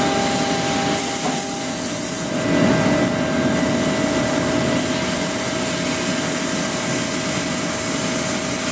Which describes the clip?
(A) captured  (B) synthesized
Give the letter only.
A